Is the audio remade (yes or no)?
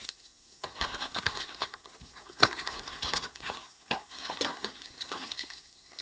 yes